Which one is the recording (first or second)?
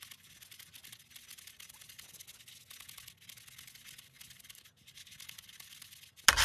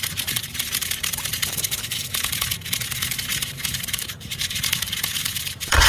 first